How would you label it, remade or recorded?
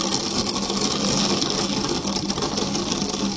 recorded